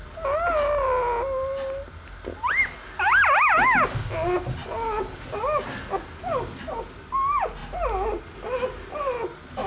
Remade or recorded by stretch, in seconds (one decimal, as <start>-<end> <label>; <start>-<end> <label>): 0.0-9.7 recorded